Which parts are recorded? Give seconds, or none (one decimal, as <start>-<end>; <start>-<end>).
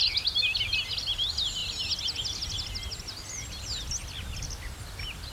0.0-5.3